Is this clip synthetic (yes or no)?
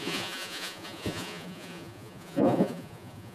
yes